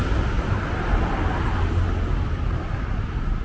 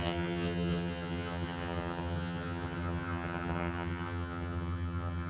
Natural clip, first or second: first